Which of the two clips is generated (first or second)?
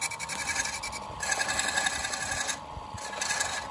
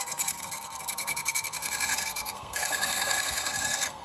second